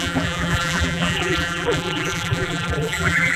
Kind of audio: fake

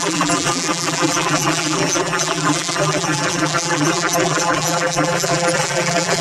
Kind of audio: fake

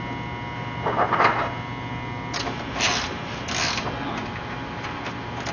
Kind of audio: real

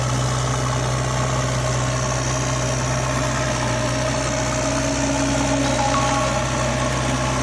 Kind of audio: real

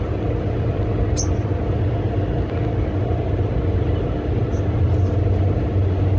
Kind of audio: real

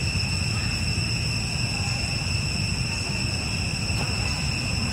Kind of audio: real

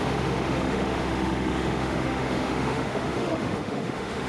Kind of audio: fake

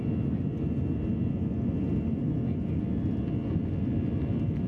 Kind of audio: real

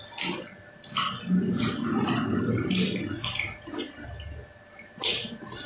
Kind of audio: real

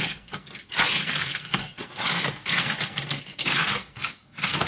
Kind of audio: fake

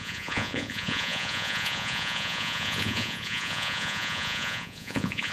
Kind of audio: fake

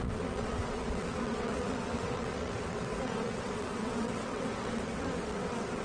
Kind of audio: fake